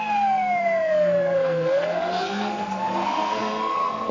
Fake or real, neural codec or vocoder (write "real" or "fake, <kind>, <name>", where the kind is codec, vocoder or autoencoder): fake, codec, SNAC